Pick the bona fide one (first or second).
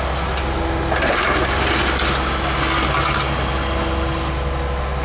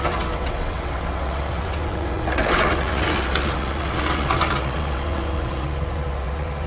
first